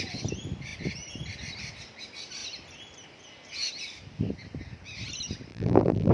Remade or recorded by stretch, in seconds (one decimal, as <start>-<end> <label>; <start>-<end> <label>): 0.0-5.5 recorded; 5.5-6.1 remade